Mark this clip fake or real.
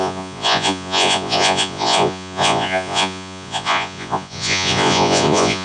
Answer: fake